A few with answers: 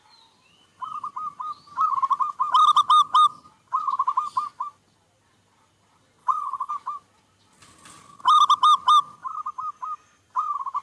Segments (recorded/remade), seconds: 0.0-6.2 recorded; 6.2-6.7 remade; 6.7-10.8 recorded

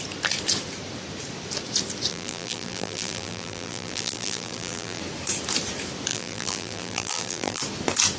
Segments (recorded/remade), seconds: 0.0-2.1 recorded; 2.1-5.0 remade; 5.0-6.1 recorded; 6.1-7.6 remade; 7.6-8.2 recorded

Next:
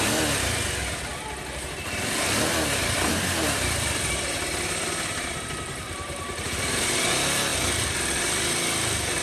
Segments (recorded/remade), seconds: 0.0-2.8 recorded; 2.8-7.1 remade; 7.1-9.2 recorded